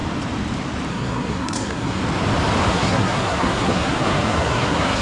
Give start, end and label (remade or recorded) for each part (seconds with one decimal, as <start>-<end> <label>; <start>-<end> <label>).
0.0-0.9 recorded; 0.9-2.0 remade; 2.0-2.7 recorded; 2.7-5.0 remade